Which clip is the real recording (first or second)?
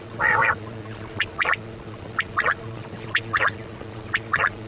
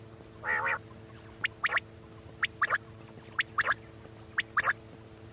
second